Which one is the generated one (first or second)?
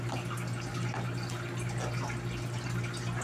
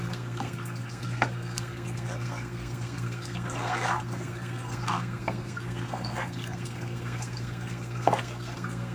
second